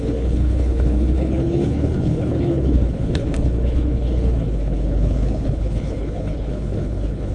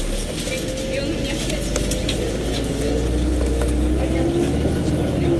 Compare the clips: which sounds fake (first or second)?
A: first